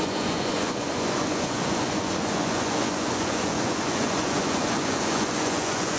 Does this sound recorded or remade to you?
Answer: remade